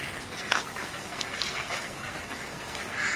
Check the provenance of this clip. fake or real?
fake